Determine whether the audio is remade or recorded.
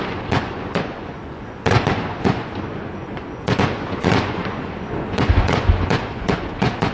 remade